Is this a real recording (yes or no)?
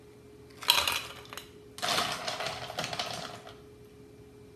yes